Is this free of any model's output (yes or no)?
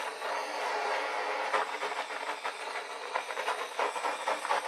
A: yes